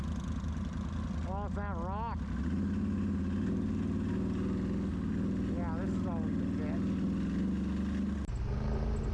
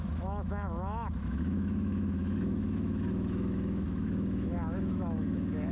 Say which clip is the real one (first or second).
first